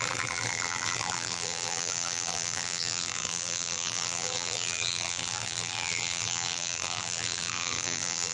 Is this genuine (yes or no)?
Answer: no